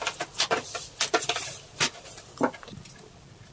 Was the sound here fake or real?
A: real